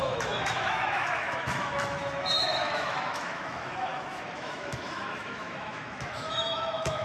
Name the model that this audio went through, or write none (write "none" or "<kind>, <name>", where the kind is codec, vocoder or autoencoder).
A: autoencoder, DAC-VAE